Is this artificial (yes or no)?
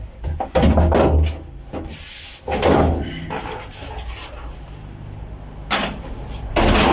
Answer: no